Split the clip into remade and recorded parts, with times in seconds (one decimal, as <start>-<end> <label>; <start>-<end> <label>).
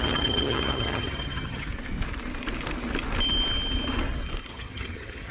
0.0-1.7 remade; 1.7-4.5 recorded; 4.5-5.3 remade